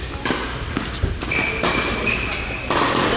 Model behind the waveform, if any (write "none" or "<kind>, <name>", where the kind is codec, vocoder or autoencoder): none